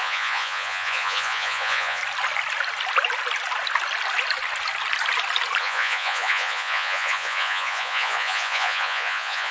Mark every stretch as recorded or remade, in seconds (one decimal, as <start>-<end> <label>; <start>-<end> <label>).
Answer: 0.0-2.0 remade; 2.0-5.6 recorded; 5.6-9.5 remade